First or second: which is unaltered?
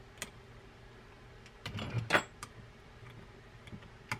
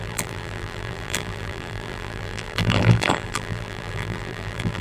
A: first